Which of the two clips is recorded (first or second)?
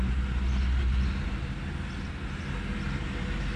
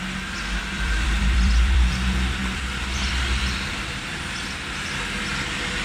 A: first